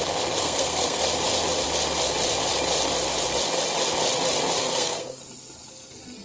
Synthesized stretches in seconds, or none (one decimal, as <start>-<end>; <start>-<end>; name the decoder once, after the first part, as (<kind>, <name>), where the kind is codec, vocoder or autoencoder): 0.4-1.0 (codec, SNAC); 4.6-5.2